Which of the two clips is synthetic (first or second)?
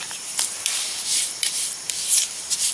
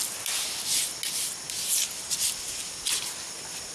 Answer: first